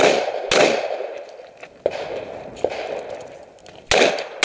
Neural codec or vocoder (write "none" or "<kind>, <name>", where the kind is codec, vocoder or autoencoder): none